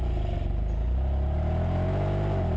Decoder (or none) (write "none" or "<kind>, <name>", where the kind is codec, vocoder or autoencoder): none